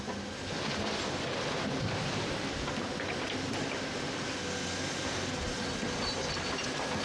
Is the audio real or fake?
real